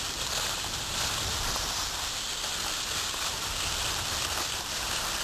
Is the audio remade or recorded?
recorded